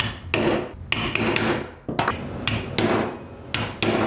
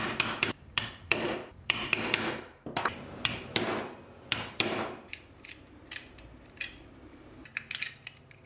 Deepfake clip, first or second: second